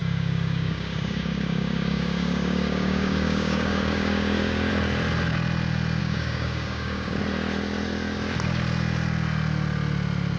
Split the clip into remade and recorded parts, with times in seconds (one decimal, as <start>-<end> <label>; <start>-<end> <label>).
0.0-4.7 remade; 4.7-6.0 recorded; 6.0-7.2 remade; 7.2-10.4 recorded